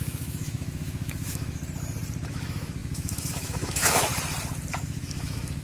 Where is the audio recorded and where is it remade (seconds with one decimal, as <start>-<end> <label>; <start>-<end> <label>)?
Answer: 0.0-1.6 remade; 1.6-2.3 recorded; 2.3-4.1 remade; 4.1-4.7 recorded; 4.7-5.6 remade

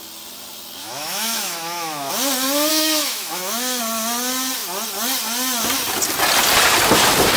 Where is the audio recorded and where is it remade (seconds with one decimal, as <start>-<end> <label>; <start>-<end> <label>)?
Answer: 0.0-0.8 recorded; 0.8-2.1 remade; 2.1-2.7 recorded; 2.7-3.8 remade; 3.8-7.4 recorded

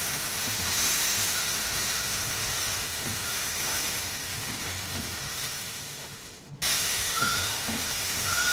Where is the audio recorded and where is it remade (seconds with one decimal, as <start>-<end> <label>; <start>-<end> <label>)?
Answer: 0.0-8.5 remade